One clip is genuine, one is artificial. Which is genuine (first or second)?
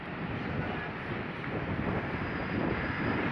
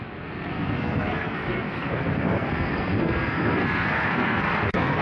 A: first